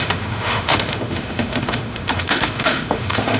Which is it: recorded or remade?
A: remade